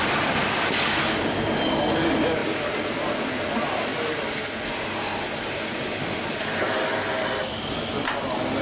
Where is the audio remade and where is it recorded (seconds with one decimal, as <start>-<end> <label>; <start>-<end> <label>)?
0.0-5.1 remade; 5.1-5.8 recorded; 5.8-8.6 remade